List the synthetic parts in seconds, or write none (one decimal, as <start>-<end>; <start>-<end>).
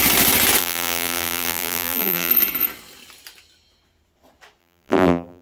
0.6-2.3; 4.6-5.4